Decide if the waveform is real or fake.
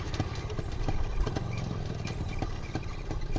real